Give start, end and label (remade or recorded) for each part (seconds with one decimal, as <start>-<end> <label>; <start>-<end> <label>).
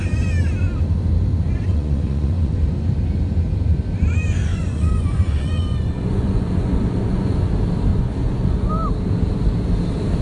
0.0-1.7 recorded; 1.7-2.5 remade; 2.5-4.5 recorded; 4.5-7.5 remade; 7.5-7.9 recorded; 7.9-8.7 remade; 8.7-10.2 recorded